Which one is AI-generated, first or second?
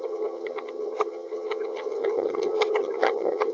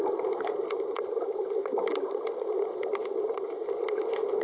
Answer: first